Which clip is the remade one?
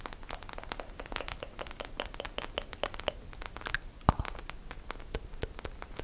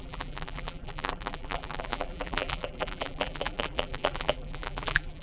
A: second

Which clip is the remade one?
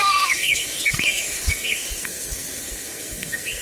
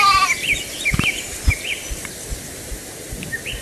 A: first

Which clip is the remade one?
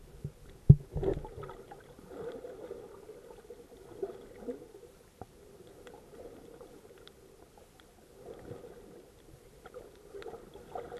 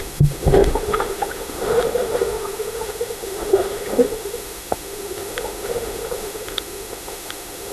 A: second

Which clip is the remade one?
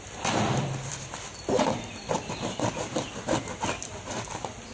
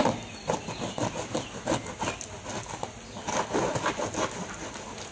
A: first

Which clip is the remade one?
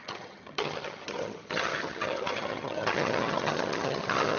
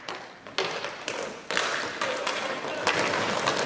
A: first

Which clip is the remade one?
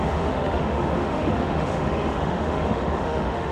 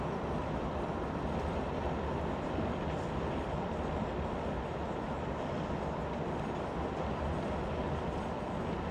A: first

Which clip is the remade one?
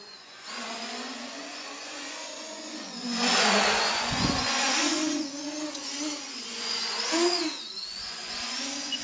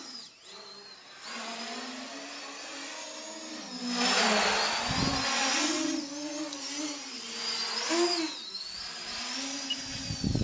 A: first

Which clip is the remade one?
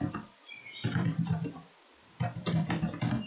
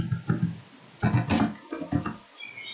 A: first